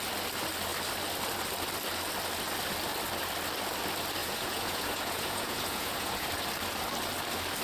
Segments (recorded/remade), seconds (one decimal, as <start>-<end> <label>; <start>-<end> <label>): 0.0-4.2 recorded; 4.2-6.3 remade; 6.3-7.6 recorded